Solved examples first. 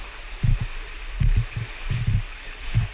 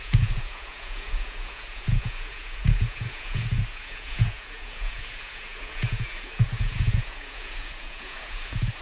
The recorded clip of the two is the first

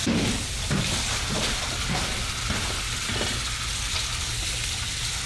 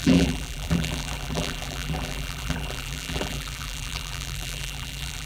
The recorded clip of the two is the first